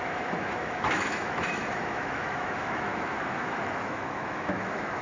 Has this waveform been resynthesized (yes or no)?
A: yes